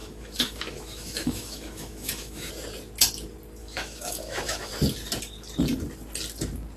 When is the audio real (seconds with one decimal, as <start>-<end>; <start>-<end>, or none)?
2.5-3.6; 4.7-6.8